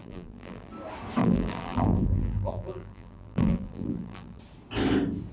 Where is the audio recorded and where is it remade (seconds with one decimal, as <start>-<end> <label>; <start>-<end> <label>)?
0.0-0.7 remade; 0.7-1.2 recorded; 1.2-4.4 remade; 4.4-5.3 recorded

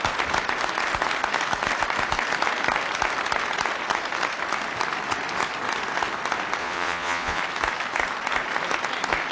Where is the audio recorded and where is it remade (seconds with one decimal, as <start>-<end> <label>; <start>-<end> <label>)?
0.0-6.6 recorded; 6.6-7.4 remade; 7.4-9.3 recorded

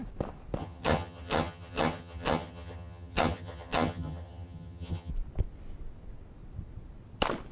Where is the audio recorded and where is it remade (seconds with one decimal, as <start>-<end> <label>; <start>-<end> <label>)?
0.0-0.6 recorded; 0.6-5.1 remade; 5.1-7.5 recorded

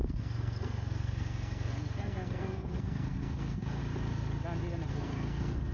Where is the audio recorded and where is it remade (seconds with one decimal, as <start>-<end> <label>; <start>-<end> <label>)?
0.0-3.8 remade; 3.8-4.9 recorded; 4.9-5.7 remade